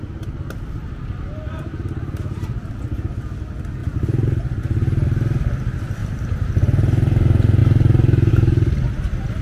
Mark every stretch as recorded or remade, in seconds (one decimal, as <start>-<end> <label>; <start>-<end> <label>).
0.0-6.0 recorded; 6.0-6.5 remade; 6.5-7.6 recorded; 7.6-8.3 remade; 8.3-9.4 recorded